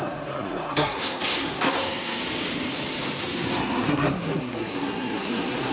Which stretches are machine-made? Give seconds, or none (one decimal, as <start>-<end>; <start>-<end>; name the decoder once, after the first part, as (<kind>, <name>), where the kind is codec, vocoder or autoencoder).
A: 0.0-2.2 (codec, SNAC); 3.2-5.7